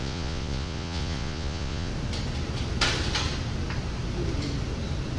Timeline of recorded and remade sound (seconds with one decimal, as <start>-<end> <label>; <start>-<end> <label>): 0.0-1.9 remade; 1.9-5.2 recorded